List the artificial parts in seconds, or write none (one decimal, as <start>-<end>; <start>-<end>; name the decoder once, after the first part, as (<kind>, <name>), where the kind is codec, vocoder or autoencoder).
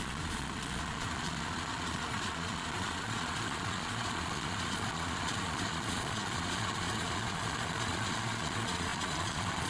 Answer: 0.0-9.7 (vocoder, Vocos)